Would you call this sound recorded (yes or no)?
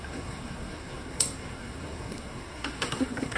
no